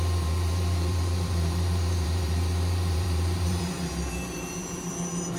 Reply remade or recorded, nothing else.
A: remade